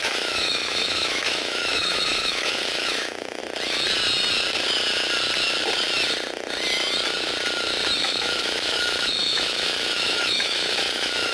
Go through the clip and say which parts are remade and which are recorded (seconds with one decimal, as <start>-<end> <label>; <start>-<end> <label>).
0.0-3.4 remade; 3.4-8.0 recorded; 8.0-11.3 remade